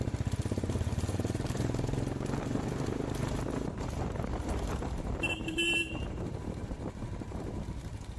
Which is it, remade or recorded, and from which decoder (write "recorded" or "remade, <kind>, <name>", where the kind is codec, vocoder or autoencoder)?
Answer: remade, vocoder, BigVGAN v2